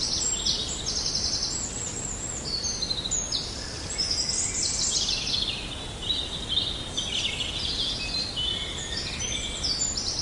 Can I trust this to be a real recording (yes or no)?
yes